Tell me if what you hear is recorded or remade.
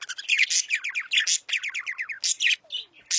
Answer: recorded